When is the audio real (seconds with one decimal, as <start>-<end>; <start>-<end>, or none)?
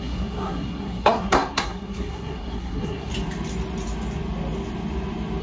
3.1-5.4